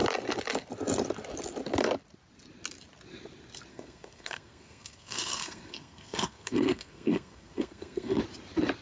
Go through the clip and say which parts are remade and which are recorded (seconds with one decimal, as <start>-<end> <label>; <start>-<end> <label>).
0.0-3.7 recorded; 3.7-8.2 remade; 8.2-8.8 recorded